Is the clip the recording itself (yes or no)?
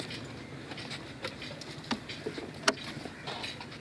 yes